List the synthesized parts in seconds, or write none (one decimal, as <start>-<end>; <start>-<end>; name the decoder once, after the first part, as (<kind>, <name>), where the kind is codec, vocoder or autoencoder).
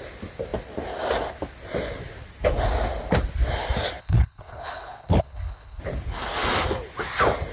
4.0-5.8 (codec, HILCodec)